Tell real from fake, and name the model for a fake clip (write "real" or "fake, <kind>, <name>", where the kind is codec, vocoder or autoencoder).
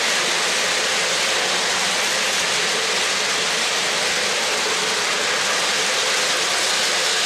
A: real